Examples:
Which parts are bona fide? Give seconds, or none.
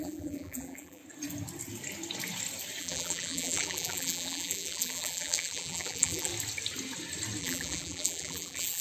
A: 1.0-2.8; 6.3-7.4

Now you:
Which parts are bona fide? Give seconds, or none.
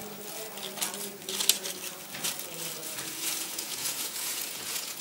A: 0.0-2.8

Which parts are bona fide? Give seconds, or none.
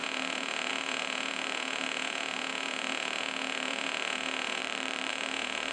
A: 4.6-5.1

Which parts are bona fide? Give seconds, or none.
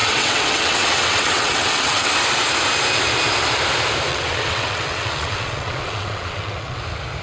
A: 2.1-4.1; 6.8-7.2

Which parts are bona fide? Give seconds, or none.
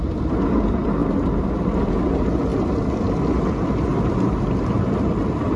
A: 0.0-5.6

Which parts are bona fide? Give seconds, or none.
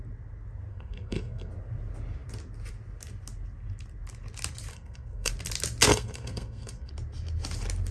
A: 0.0-0.7; 1.5-4.7; 5.3-5.9; 6.9-7.9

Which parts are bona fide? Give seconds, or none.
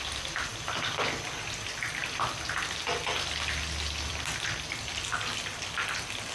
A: 0.0-6.3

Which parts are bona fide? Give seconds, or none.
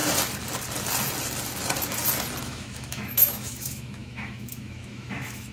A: 0.0-2.4